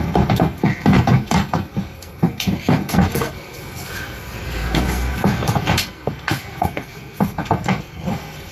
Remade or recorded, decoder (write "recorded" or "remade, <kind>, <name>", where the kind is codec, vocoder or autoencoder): remade, codec, SNAC